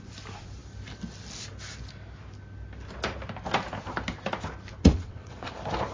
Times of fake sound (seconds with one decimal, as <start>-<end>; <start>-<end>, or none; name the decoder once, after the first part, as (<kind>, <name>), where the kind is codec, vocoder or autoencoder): 4.8-5.5 (vocoder, WaveNeXt)